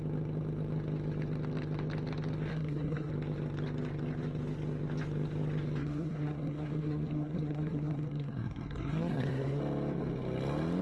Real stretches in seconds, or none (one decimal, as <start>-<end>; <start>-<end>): 0.0-2.5; 3.1-5.8; 9.6-10.8